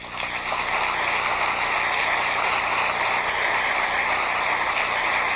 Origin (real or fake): real